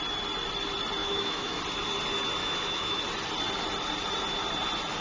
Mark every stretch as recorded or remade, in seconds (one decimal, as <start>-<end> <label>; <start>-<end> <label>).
0.0-1.0 recorded; 1.0-1.6 remade; 1.6-2.4 recorded; 2.4-3.0 remade; 3.0-5.0 recorded